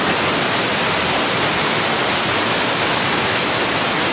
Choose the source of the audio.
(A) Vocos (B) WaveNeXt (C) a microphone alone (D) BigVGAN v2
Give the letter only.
C